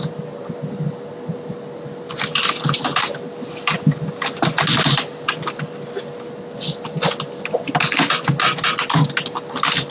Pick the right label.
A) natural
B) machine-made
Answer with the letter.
A